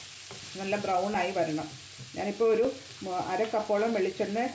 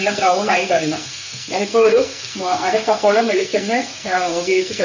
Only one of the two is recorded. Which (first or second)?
first